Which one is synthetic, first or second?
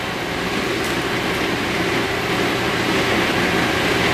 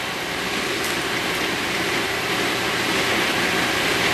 second